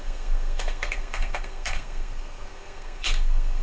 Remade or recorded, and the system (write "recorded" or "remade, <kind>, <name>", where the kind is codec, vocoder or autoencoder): remade, codec, SNAC